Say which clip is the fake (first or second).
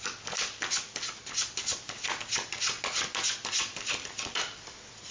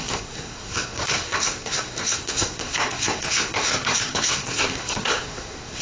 second